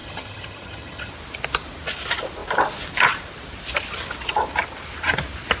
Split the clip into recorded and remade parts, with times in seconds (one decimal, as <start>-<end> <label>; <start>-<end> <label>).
0.0-1.1 remade; 1.1-5.6 recorded